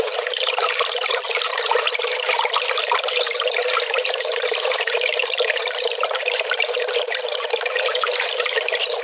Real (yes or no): no